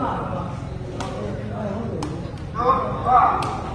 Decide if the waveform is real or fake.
real